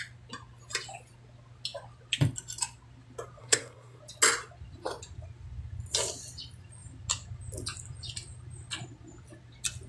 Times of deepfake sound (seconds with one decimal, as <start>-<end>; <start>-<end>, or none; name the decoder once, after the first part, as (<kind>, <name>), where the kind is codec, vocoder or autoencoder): 3.4-4.0 (codec, SNAC)